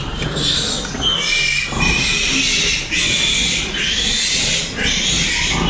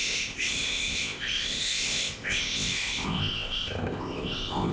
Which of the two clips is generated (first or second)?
second